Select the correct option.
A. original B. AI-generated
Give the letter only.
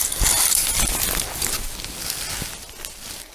A